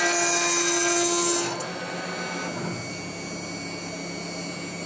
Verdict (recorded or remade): recorded